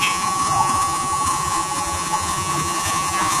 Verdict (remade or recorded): remade